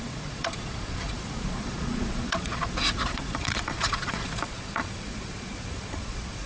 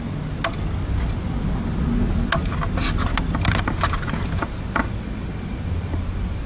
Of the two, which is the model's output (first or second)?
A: first